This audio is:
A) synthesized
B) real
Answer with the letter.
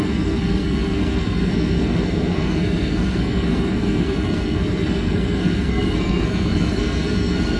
A